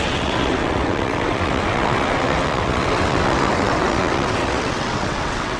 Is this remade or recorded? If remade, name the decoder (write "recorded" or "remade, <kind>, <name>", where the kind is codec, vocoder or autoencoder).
remade, vocoder, WaveNeXt